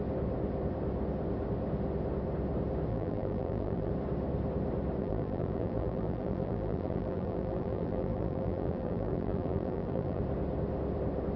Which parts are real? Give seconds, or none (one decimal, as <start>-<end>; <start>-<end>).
0.0-2.9; 3.9-5.0; 10.2-11.4